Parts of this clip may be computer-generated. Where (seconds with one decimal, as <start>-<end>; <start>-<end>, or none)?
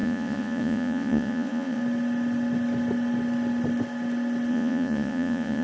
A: 0.0-1.8; 4.5-5.6